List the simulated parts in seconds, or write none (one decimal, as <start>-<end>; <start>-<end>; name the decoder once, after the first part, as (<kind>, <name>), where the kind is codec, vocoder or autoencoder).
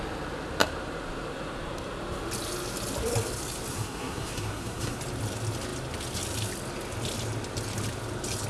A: 3.7-5.0 (codec, SNAC)